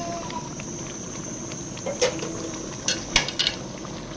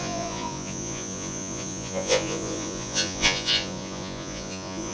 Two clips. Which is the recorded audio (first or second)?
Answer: first